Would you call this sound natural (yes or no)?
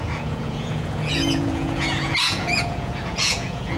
no